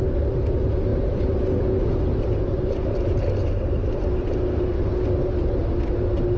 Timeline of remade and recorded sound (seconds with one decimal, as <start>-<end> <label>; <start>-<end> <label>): 0.0-6.4 recorded

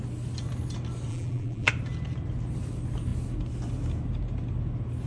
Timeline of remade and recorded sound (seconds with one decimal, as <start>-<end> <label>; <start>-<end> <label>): 0.0-1.1 recorded; 1.1-1.7 remade; 1.7-5.1 recorded

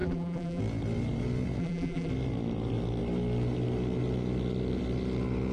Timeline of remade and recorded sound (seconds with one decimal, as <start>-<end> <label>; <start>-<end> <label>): 0.0-0.6 remade; 0.6-1.6 recorded; 1.6-2.1 remade; 2.1-5.5 recorded

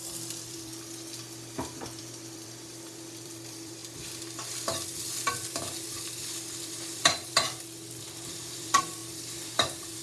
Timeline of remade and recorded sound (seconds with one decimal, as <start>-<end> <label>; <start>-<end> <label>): 0.0-0.7 remade; 0.7-1.5 recorded; 1.5-3.8 remade; 3.8-6.6 recorded; 6.6-10.0 remade

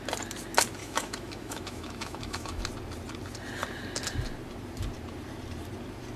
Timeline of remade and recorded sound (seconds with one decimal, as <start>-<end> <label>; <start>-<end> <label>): 0.0-0.8 recorded; 0.8-2.6 remade; 2.6-6.2 recorded

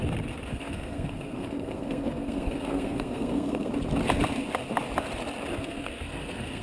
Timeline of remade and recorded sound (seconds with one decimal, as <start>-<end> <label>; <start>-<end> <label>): 0.0-0.5 recorded; 0.5-3.7 remade; 3.7-5.6 recorded; 5.6-6.6 remade